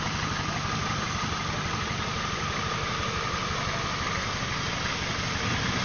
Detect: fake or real real